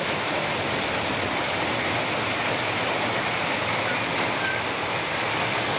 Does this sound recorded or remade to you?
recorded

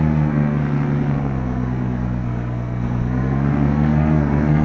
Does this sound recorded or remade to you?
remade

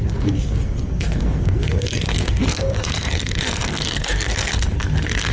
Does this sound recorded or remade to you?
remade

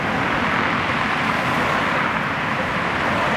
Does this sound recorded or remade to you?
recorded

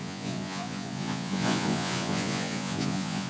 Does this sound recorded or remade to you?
remade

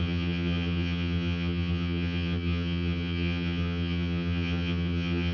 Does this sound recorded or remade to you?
remade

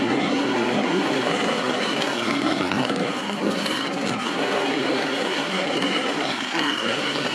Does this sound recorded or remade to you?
remade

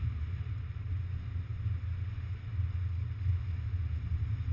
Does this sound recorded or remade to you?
recorded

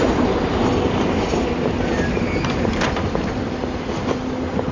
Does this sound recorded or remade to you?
recorded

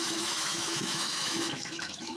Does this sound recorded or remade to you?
remade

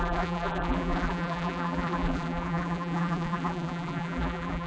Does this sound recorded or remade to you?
remade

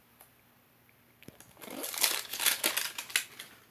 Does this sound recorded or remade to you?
recorded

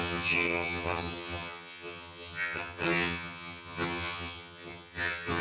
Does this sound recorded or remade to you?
remade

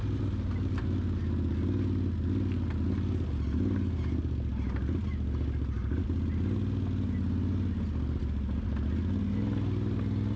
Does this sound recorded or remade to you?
recorded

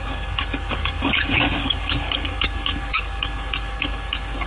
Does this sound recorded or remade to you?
remade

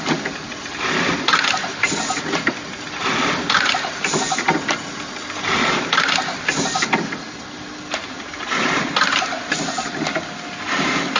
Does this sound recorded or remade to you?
recorded